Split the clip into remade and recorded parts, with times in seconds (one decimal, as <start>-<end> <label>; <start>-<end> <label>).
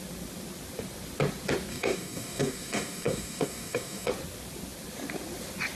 0.0-1.7 recorded; 1.7-4.1 remade; 4.1-5.8 recorded